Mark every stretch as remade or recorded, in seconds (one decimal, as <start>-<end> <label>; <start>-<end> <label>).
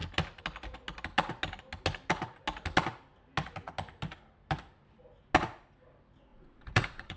0.0-6.3 recorded; 6.3-7.2 remade